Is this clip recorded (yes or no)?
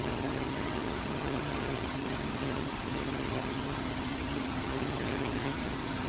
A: no